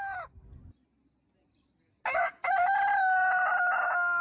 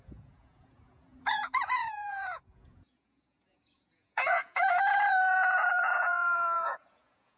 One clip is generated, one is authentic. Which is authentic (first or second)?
first